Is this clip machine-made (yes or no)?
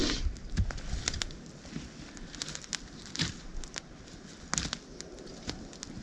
no